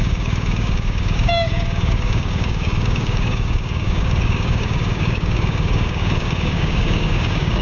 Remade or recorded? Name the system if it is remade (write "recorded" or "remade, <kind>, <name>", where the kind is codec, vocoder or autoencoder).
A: remade, codec, DAC